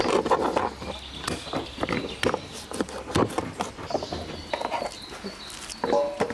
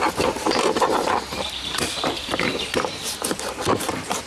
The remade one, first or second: second